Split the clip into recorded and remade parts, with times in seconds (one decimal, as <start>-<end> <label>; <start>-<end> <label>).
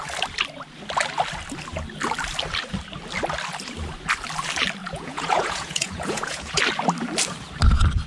0.0-4.8 recorded; 4.8-6.6 remade; 6.6-8.1 recorded